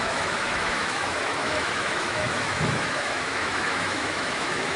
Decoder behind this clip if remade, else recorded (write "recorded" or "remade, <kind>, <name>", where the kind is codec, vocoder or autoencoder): remade, autoencoder, DAC-VAE